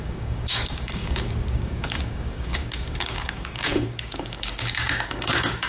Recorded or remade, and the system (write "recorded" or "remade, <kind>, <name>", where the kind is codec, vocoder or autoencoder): remade, codec, DAC